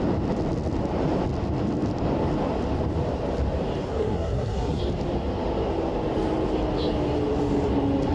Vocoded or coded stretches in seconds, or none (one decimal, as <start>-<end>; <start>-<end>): 4.0-4.8